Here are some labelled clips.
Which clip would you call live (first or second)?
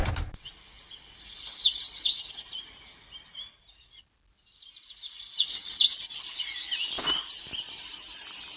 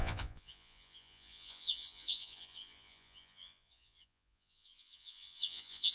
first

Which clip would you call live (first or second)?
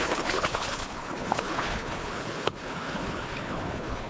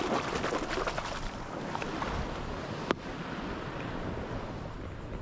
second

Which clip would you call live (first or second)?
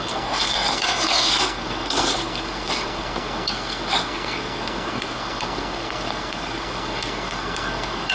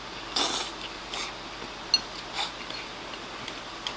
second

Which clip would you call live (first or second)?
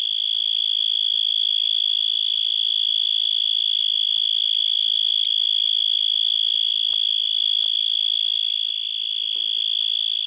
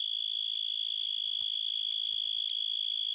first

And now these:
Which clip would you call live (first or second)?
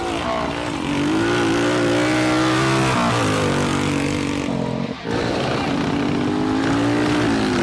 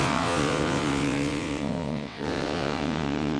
first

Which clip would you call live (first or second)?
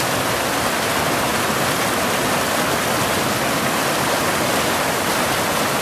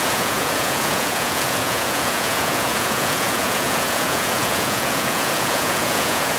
first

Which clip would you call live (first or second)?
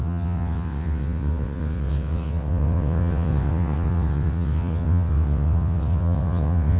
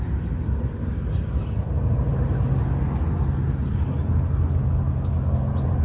second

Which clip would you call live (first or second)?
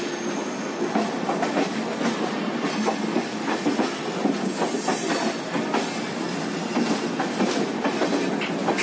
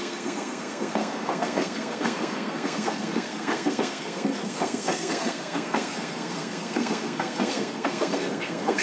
first